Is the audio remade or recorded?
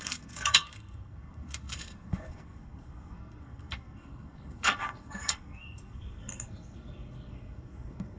remade